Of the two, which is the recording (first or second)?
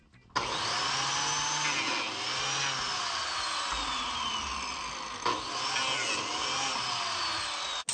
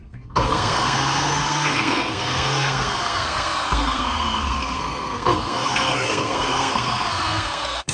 first